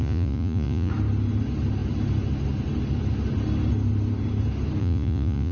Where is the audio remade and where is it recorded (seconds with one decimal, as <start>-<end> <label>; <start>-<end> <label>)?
0.0-0.9 remade; 0.9-4.8 recorded; 4.8-5.5 remade

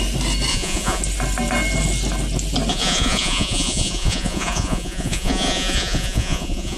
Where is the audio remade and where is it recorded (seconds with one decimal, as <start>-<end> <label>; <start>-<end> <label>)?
0.0-0.5 recorded; 0.5-1.0 remade; 1.0-2.7 recorded; 2.7-6.8 remade